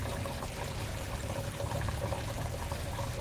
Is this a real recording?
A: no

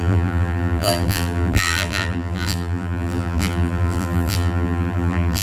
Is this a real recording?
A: no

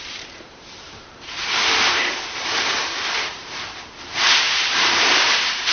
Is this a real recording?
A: no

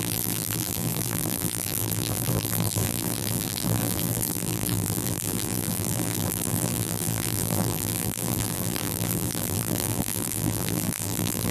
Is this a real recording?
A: no